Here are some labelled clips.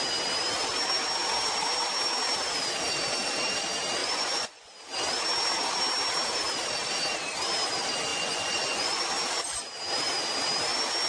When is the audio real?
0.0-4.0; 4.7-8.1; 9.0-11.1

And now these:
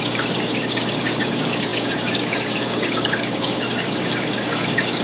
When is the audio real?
none

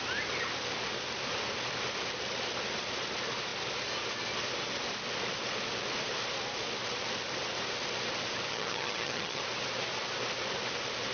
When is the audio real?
0.0-8.5; 9.4-11.1